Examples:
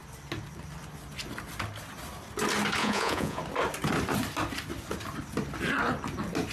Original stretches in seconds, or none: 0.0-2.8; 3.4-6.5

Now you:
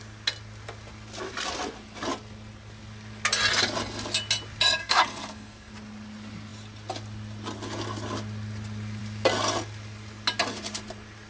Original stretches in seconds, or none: 0.0-4.8; 5.7-11.3

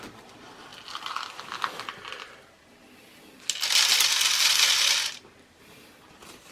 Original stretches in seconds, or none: 0.0-6.5